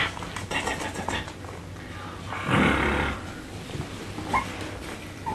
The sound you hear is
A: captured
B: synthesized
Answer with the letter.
A